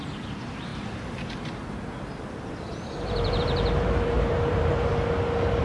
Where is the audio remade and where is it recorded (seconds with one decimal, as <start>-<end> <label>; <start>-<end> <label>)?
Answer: 0.0-4.9 remade; 4.9-5.6 recorded